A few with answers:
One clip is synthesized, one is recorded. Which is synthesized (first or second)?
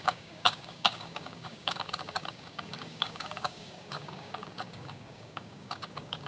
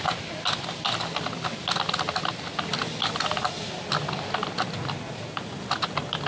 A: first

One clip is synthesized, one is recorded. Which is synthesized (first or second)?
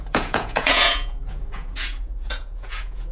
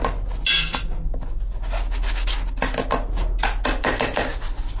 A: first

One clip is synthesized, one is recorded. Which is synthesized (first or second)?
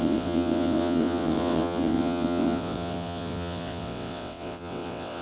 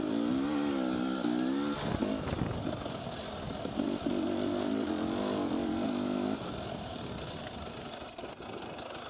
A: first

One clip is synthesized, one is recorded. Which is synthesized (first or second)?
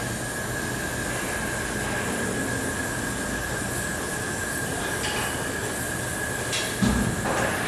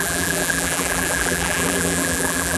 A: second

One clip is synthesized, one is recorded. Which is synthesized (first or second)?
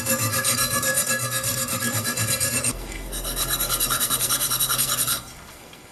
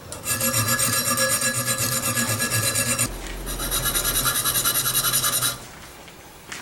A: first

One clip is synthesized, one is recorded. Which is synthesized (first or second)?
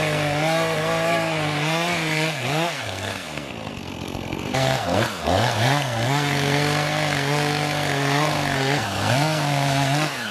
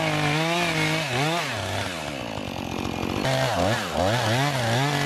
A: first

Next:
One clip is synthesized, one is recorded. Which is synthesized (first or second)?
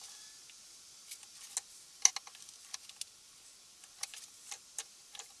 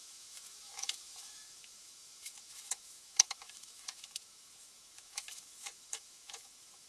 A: second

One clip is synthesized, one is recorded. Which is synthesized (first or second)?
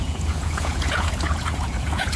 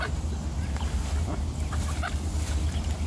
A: first